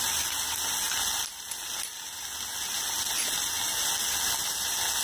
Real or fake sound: real